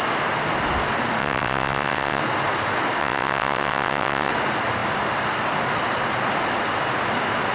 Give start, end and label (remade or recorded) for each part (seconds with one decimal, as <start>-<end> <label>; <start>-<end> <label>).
0.0-1.2 recorded; 1.2-2.2 remade; 2.2-3.0 recorded; 3.0-4.3 remade; 4.3-7.5 recorded